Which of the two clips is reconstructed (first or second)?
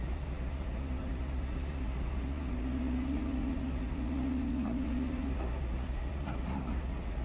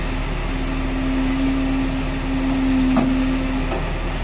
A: first